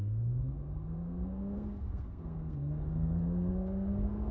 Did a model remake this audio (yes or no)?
yes